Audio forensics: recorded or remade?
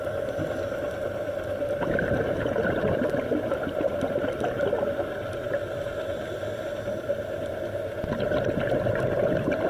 recorded